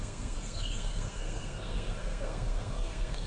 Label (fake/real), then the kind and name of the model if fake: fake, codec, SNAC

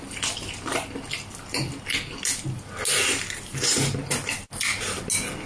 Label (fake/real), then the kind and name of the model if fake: real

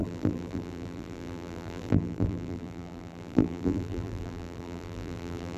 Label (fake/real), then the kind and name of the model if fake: fake, vocoder, BigVGAN v2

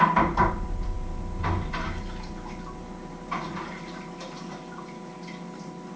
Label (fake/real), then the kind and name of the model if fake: real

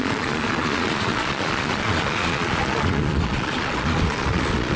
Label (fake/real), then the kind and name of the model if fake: fake, vocoder, Vocos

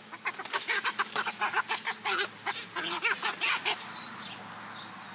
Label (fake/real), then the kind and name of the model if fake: real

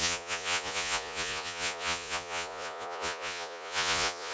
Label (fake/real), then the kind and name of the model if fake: fake, vocoder, Vocos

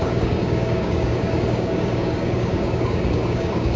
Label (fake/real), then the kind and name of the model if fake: fake, codec, DAC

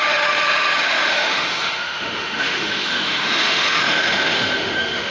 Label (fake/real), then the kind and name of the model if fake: fake, autoencoder, DAC-VAE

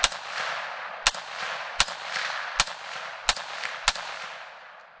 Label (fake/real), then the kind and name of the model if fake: real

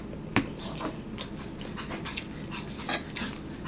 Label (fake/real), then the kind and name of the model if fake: real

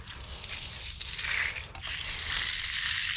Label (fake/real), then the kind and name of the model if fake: real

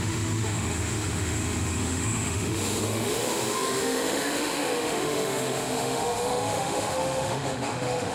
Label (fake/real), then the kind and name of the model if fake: fake, autoencoder, DAC-VAE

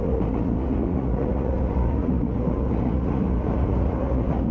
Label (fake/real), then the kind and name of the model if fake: fake, vocoder, Vocos